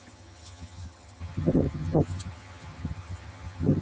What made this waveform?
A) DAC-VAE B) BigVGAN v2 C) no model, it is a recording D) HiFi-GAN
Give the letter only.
D